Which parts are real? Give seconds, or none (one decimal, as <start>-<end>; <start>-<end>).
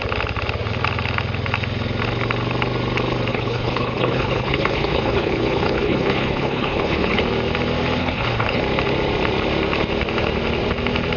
0.0-3.3; 7.2-8.0; 8.6-11.2